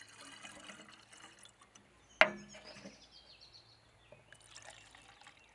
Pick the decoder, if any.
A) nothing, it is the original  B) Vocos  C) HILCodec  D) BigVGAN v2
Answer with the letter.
A